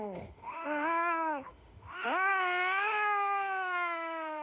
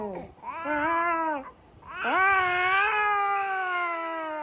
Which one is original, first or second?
second